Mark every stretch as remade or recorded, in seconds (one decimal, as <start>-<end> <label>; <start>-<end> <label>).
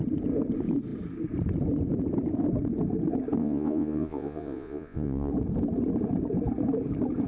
0.0-3.4 recorded; 3.4-5.3 remade; 5.3-7.3 recorded